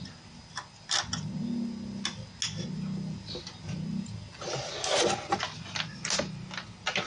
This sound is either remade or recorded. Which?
recorded